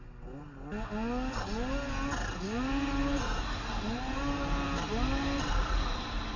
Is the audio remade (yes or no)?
no